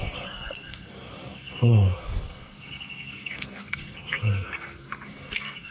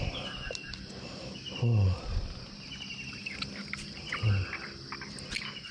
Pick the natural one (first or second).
second